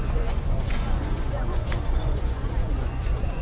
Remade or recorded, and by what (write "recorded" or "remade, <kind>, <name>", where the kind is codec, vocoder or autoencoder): remade, vocoder, Vocos